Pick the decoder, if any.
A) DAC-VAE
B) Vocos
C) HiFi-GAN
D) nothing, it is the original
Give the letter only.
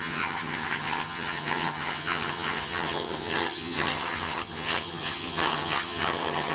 C